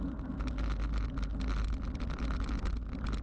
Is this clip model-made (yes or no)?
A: no